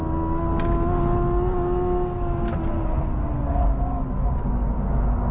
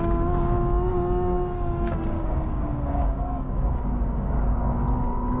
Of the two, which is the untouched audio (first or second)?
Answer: first